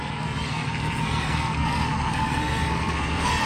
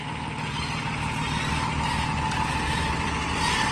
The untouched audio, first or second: second